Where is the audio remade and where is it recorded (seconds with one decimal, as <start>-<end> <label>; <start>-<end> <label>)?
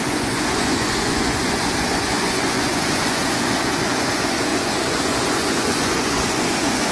0.0-6.9 remade